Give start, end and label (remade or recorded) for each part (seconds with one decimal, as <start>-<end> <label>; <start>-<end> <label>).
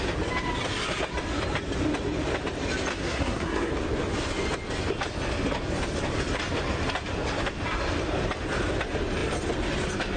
0.0-2.9 recorded; 2.9-3.7 remade; 3.7-10.2 recorded